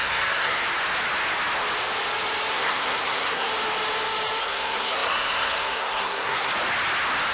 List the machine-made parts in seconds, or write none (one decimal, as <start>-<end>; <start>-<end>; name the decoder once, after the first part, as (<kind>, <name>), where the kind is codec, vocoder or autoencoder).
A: 0.0-0.6 (codec, SNAC); 2.5-3.5; 4.4-6.5